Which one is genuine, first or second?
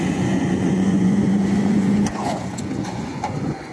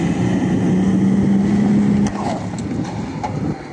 second